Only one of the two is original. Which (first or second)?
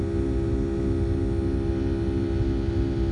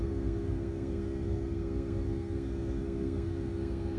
first